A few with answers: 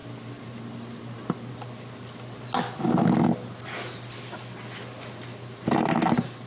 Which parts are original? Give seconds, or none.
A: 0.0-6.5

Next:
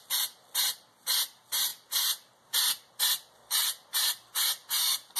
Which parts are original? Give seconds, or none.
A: none

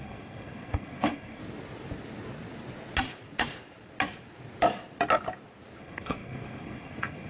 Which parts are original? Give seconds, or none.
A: 1.4-5.8

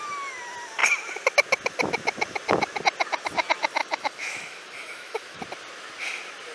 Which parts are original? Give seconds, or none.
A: 0.0-3.8; 5.4-6.5

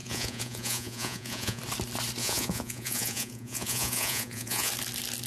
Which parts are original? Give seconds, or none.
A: 1.6-2.2; 4.7-5.3